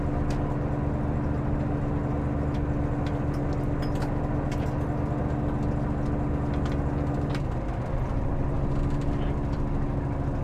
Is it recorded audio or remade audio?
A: recorded